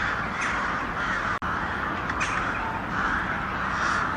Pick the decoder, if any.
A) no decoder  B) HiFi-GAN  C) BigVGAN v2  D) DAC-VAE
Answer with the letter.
A